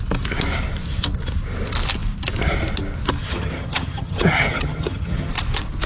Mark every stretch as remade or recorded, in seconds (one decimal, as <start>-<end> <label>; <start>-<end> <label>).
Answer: 0.0-3.2 recorded; 3.2-5.3 remade; 5.3-5.9 recorded